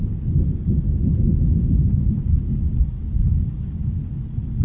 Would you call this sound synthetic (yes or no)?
no